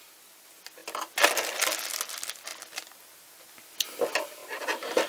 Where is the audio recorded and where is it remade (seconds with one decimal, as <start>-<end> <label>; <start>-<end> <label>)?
0.0-5.1 recorded